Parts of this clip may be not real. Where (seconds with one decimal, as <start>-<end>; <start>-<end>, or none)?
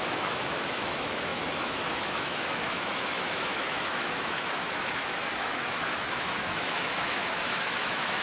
0.0-8.2